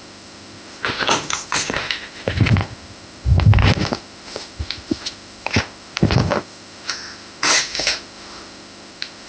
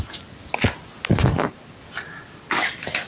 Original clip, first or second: second